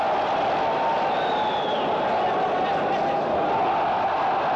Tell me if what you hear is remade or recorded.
recorded